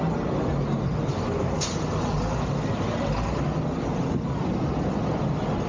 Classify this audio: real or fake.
real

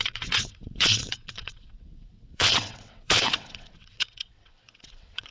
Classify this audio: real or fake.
fake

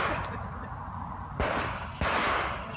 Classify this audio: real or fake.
real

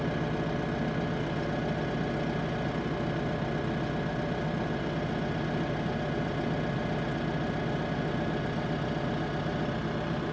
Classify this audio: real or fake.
real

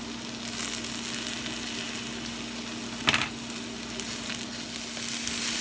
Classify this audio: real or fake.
real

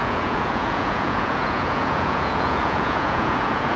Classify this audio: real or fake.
fake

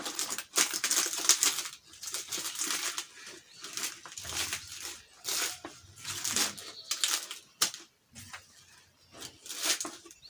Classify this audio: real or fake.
real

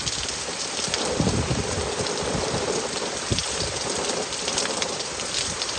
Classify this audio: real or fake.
fake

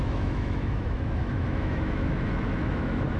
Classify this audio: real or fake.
fake